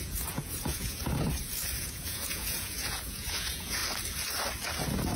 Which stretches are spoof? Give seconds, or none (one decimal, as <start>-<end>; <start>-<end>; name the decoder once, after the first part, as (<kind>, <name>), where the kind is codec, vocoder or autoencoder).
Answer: 0.0-1.0 (vocoder, Vocos); 1.8-3.8